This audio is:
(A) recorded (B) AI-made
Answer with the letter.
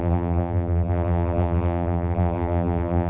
B